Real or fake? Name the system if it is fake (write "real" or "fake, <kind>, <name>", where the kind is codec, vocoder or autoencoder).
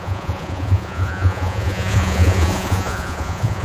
fake, vocoder, Vocos